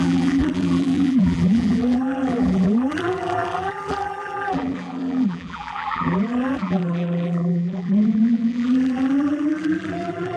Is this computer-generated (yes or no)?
yes